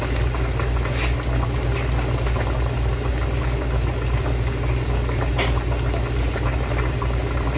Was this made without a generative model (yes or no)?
yes